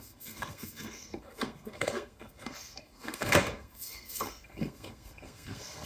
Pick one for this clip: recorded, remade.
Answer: remade